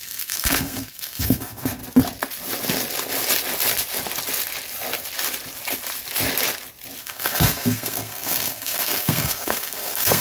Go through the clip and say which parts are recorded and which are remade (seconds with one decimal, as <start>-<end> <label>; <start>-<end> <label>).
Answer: 0.0-1.8 remade; 1.8-7.0 recorded; 7.0-10.2 remade